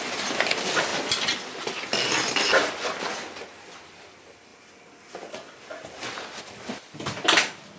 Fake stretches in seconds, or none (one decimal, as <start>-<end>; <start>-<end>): none